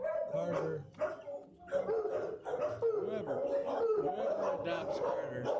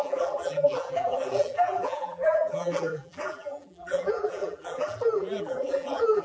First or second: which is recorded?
first